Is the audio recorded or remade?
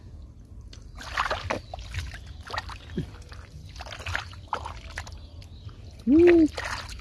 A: recorded